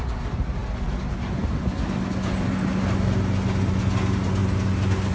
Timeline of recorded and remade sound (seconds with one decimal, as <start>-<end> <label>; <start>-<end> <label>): 0.0-5.1 recorded